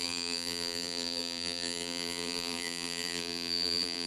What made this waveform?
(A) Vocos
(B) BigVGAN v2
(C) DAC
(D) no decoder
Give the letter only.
B